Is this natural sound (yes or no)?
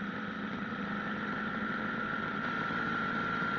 no